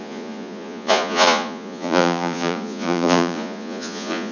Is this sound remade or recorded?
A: remade